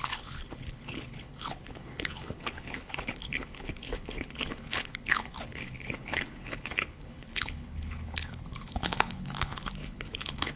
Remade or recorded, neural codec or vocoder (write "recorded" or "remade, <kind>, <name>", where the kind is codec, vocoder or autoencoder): remade, codec, HILCodec